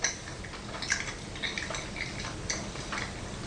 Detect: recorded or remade recorded